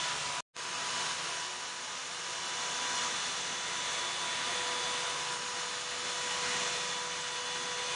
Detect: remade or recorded recorded